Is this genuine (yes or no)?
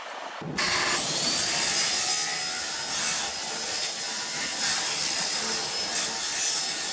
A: yes